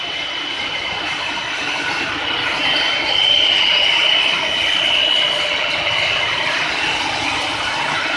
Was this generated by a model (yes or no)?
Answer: no